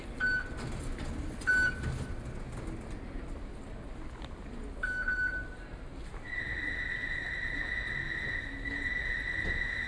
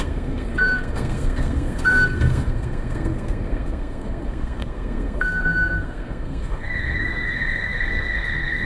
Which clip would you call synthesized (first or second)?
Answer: second